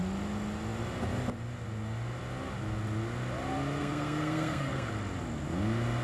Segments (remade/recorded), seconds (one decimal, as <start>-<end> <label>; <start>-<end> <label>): 0.0-3.8 recorded; 3.8-4.9 remade; 4.9-6.0 recorded